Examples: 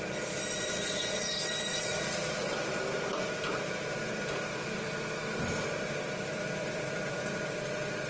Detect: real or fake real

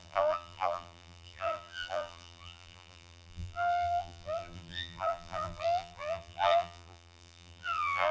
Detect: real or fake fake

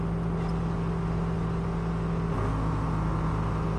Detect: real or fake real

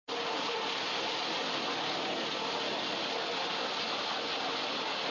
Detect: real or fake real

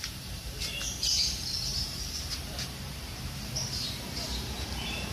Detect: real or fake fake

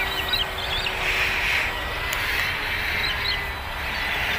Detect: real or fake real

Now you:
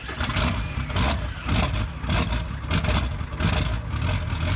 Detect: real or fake real